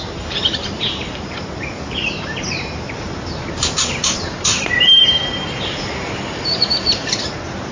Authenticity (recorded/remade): remade